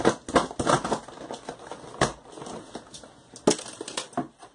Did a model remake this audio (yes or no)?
no